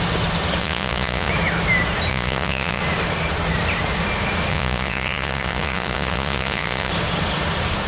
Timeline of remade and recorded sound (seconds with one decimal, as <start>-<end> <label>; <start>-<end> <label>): 0.0-0.6 recorded; 0.6-1.3 remade; 1.3-2.1 recorded; 2.1-2.8 remade; 2.8-4.5 recorded; 4.5-6.9 remade; 6.9-7.9 recorded